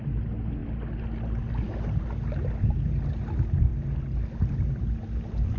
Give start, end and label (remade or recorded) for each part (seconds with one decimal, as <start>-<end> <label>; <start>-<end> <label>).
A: 0.0-5.6 recorded